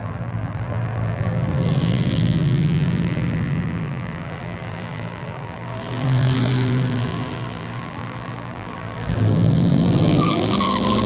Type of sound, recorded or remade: remade